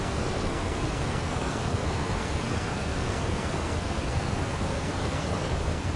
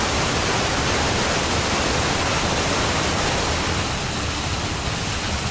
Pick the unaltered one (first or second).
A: second